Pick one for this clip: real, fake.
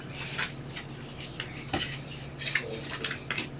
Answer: real